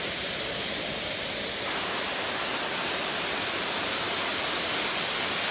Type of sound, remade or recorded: recorded